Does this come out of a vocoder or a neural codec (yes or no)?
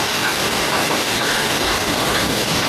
yes